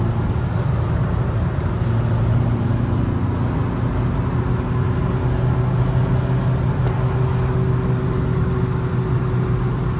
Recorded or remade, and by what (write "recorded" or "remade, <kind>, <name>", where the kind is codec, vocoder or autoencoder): recorded